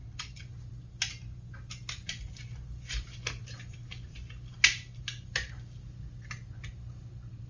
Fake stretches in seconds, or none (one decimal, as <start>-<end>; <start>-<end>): none